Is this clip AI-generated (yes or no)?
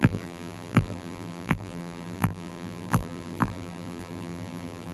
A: yes